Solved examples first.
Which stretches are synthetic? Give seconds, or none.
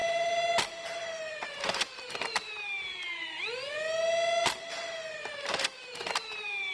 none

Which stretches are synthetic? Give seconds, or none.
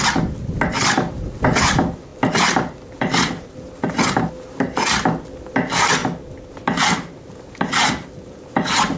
none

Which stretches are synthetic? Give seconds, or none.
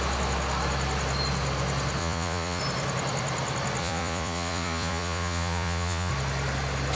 2.0-2.6; 3.8-6.1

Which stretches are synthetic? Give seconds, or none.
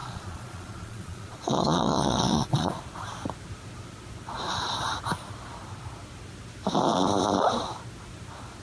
0.0-2.8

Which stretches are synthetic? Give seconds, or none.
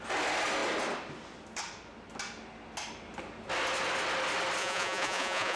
4.6-5.6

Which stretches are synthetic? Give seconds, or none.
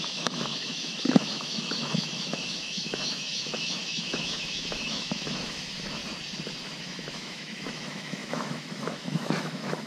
0.0-6.0; 6.8-9.9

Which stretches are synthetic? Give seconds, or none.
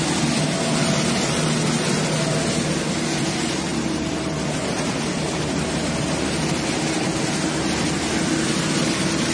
none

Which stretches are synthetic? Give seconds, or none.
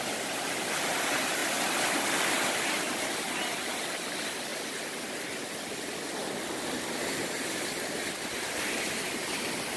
0.0-4.5; 9.1-9.8